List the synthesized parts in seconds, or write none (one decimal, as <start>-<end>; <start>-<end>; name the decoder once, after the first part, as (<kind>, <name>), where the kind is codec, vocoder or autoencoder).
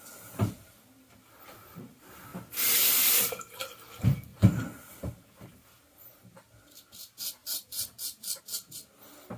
none